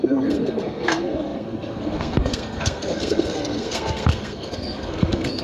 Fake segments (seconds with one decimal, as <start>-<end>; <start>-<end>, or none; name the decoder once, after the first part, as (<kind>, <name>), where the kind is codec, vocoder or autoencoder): 0.0-5.4 (codec, SNAC)